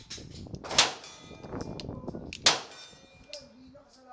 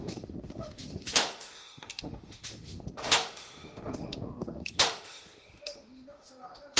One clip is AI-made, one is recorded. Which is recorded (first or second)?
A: first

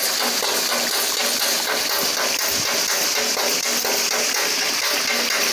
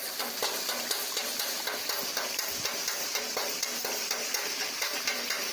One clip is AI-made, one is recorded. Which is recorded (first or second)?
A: first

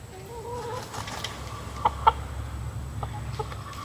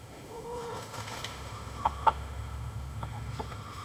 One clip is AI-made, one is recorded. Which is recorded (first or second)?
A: first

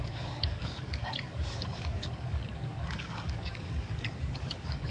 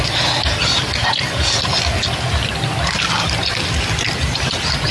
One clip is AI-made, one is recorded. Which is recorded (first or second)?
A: second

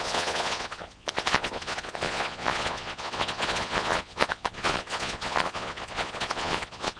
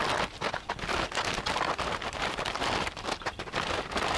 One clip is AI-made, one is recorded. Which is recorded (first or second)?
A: second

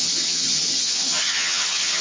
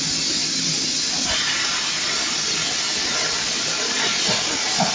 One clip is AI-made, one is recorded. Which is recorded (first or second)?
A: second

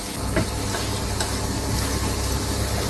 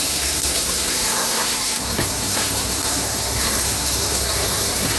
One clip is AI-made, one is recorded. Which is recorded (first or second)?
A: first